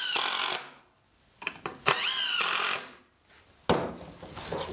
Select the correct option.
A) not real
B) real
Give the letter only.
B